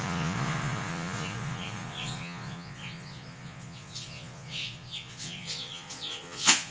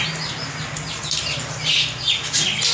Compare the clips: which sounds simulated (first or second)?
first